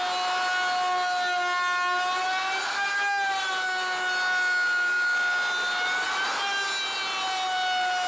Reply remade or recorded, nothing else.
recorded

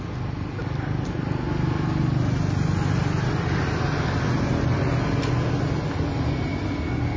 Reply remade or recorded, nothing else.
recorded